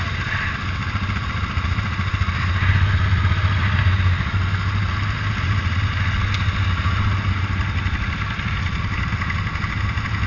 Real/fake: real